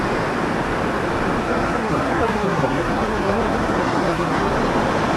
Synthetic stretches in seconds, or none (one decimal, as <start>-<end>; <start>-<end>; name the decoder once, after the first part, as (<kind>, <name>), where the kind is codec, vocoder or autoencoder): 1.4-4.5 (codec, SNAC)